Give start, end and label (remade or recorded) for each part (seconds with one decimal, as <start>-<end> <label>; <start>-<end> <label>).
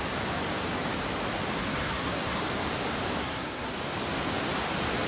0.0-1.6 recorded; 1.6-2.4 remade; 2.4-3.2 recorded; 3.2-3.7 remade; 3.7-5.1 recorded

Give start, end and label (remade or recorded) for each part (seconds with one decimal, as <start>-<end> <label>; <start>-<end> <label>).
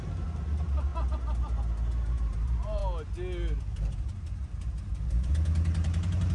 0.0-0.9 remade; 0.9-2.1 recorded; 2.1-2.8 remade; 2.8-3.6 recorded; 3.6-6.3 remade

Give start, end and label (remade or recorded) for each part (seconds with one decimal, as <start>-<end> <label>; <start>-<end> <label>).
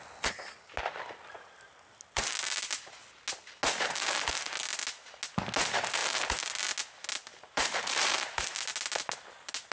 0.0-7.3 recorded; 7.3-8.2 remade; 8.2-9.7 recorded